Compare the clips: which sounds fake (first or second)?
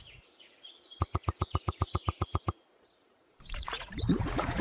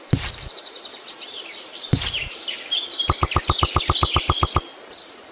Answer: first